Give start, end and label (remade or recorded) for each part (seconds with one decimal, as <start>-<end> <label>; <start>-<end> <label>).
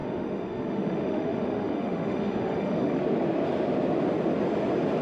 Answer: 0.0-3.0 remade; 3.0-5.0 recorded